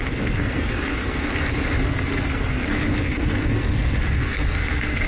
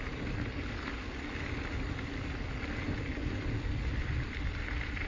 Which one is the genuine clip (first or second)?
second